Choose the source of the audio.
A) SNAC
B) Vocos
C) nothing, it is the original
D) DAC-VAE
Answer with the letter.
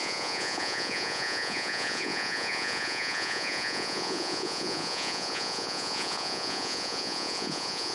B